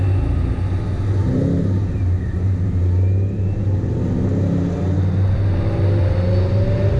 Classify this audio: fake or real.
real